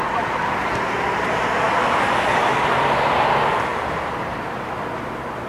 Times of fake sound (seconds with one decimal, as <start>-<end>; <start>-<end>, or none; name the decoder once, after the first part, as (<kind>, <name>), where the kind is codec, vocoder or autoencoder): none